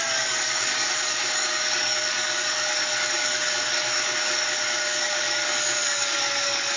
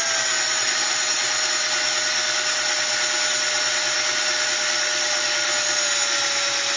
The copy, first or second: first